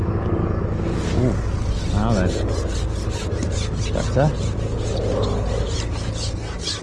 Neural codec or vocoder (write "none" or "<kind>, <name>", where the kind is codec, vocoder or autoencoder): none